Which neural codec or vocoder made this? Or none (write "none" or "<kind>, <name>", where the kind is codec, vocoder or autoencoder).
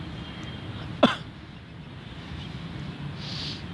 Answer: none